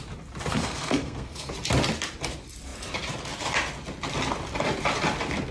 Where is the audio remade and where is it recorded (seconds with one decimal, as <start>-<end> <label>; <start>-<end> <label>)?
0.0-0.5 recorded; 0.5-1.5 remade; 1.5-5.5 recorded